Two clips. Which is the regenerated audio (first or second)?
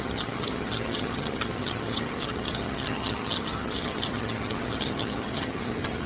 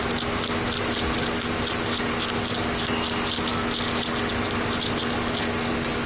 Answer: first